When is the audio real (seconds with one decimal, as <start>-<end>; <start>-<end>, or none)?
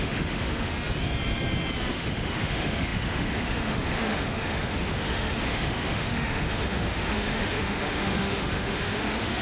0.7-1.9